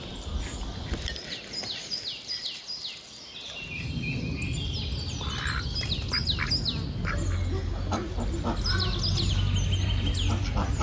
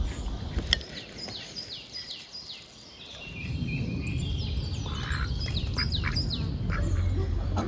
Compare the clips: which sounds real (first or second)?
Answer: first